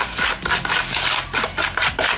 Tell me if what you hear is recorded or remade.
recorded